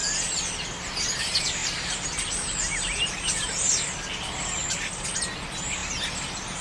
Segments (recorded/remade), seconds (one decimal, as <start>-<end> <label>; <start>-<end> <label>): 0.0-1.6 recorded; 1.6-3.7 remade; 3.7-6.6 recorded